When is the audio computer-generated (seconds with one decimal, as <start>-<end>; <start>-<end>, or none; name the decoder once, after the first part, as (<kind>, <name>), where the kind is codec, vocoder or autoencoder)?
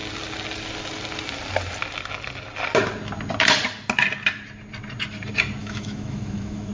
5.6-6.7 (autoencoder, DAC-VAE)